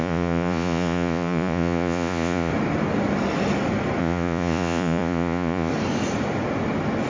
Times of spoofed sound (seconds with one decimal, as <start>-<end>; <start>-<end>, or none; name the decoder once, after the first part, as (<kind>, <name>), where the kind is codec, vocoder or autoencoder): 0.0-2.5 (vocoder, Vocos); 4.0-5.7